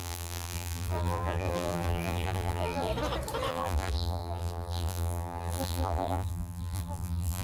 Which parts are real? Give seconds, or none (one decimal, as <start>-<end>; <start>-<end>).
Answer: 2.9-3.5